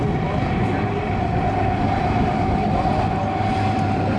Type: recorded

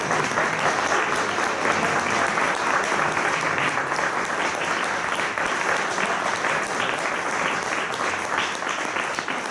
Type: recorded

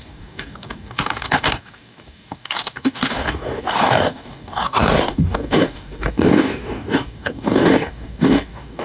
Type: remade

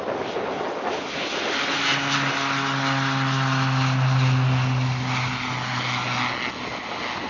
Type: recorded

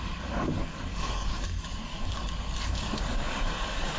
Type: remade